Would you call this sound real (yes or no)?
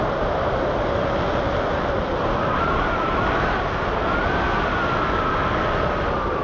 yes